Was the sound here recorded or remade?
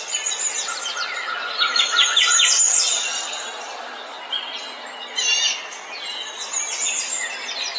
recorded